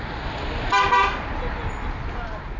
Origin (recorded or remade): recorded